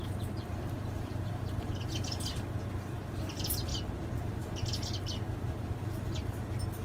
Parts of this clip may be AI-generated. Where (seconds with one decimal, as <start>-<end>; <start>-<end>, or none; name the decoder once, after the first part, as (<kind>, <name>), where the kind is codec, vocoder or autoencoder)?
0.0-3.7 (vocoder, BigVGAN v2); 4.2-6.8